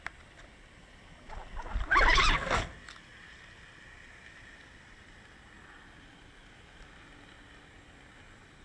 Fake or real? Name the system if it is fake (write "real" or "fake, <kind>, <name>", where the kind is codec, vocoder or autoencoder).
real